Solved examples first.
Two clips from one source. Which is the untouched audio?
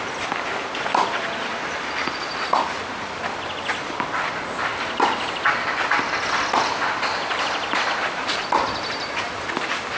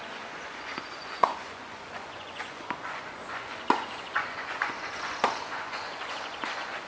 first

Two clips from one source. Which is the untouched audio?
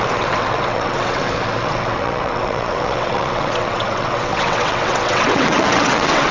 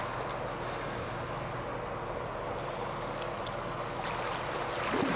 second